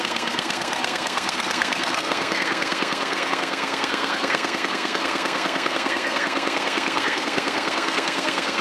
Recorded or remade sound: remade